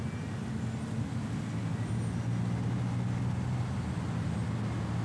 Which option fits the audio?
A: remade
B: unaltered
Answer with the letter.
B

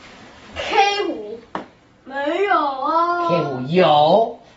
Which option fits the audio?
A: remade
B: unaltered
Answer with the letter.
B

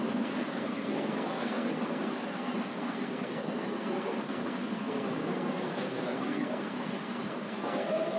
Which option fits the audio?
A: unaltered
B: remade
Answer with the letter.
B